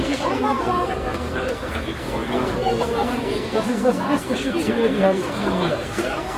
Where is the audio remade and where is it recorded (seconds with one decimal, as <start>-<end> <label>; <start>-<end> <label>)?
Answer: 0.0-6.4 remade